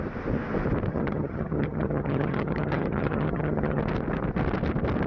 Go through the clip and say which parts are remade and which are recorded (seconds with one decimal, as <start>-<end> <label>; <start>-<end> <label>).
0.0-0.9 recorded; 0.9-3.8 remade; 3.8-5.1 recorded

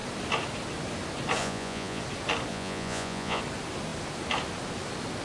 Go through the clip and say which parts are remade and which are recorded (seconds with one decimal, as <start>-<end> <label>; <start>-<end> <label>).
0.0-1.4 recorded; 1.4-2.0 remade; 2.0-2.5 recorded; 2.5-3.4 remade; 3.4-5.2 recorded

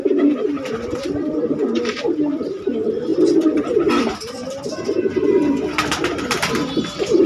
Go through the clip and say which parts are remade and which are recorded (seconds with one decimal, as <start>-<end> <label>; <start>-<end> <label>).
0.0-3.1 remade; 3.1-4.0 recorded; 4.0-7.3 remade

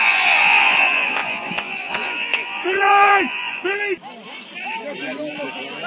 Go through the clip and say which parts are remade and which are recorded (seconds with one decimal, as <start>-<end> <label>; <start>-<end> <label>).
0.0-3.7 remade; 3.7-5.9 recorded

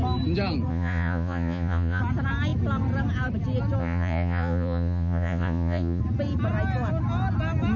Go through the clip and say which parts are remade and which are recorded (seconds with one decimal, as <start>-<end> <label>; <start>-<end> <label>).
0.0-0.7 recorded; 0.7-2.0 remade; 2.0-3.8 recorded; 3.8-6.0 remade; 6.0-7.8 recorded

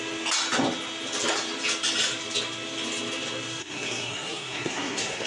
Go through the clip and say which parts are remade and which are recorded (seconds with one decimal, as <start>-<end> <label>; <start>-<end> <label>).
0.0-3.6 recorded; 3.6-5.3 remade

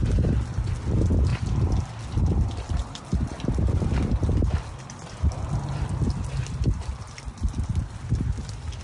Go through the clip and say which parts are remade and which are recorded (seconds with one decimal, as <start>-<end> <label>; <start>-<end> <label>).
0.0-8.8 recorded